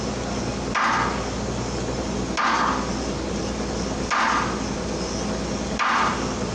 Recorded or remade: recorded